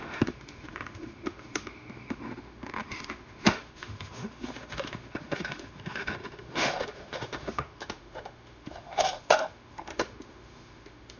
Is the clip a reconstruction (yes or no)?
yes